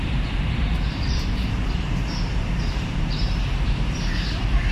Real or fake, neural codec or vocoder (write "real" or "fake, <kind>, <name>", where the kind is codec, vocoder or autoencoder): fake, vocoder, BigVGAN v2